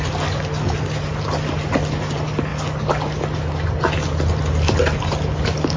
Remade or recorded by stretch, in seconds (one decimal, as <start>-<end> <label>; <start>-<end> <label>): 0.0-5.8 recorded